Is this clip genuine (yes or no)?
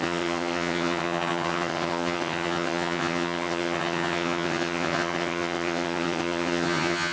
no